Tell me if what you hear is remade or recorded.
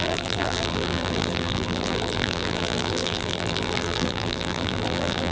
remade